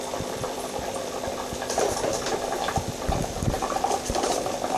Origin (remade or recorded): recorded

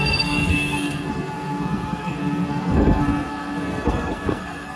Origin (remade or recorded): remade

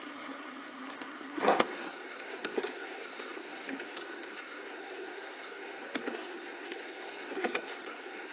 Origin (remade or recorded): remade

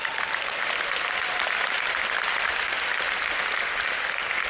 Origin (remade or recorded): recorded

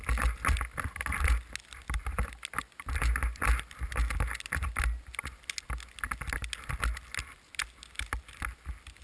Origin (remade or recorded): recorded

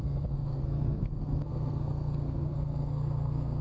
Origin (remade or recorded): remade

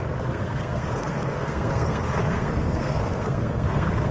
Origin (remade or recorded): remade